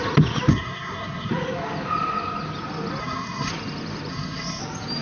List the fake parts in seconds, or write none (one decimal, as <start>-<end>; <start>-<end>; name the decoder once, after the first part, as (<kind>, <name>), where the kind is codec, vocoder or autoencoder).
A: 0.5-1.3 (codec, SNAC); 3.0-3.5; 4.1-4.6